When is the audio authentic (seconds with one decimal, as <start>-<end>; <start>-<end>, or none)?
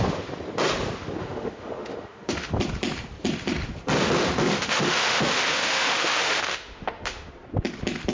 0.0-1.2; 2.5-4.4; 7.3-8.1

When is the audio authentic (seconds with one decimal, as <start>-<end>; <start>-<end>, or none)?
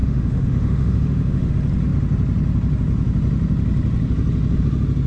1.5-5.1